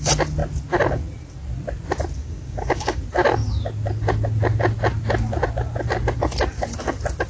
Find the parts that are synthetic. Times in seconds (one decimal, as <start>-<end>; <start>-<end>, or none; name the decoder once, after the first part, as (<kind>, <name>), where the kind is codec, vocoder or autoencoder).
2.2-3.0 (codec, DAC)